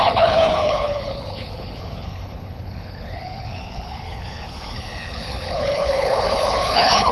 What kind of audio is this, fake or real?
fake